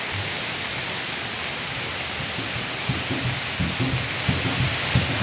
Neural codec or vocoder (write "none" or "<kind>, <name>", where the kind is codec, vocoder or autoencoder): none